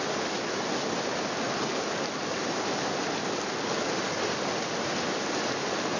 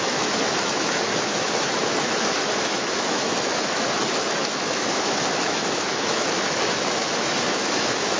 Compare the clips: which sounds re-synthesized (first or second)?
second